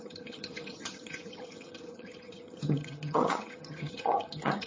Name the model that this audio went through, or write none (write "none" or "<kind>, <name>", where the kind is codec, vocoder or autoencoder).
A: vocoder, HiFi-GAN